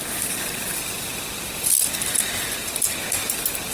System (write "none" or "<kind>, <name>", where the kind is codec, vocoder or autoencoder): none